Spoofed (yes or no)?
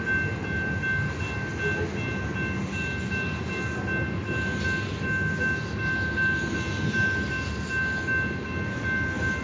no